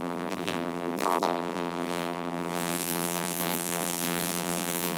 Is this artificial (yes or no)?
yes